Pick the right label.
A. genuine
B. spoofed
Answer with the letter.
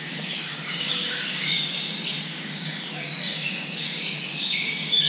B